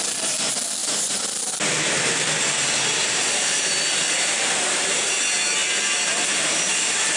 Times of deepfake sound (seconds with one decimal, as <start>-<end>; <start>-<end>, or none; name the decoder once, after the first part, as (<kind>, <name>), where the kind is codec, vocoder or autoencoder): 0.8-5.1 (vocoder, BigVGAN v2); 5.6-6.2